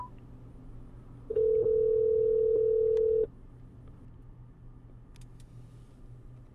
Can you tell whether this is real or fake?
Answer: real